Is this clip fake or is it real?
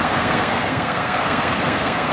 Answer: fake